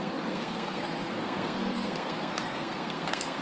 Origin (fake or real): fake